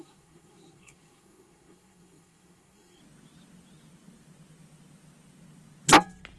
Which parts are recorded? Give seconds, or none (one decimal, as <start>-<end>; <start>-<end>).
3.0-6.4